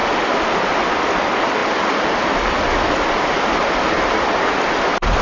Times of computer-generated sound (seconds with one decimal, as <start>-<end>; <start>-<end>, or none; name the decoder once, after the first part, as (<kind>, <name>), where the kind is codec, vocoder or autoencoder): none